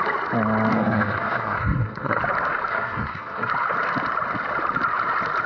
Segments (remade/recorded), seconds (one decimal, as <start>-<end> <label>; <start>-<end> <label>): 0.0-0.7 recorded; 0.7-2.2 remade; 2.2-2.7 recorded; 2.7-3.5 remade; 3.5-5.5 recorded